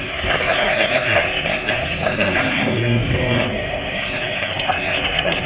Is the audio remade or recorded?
remade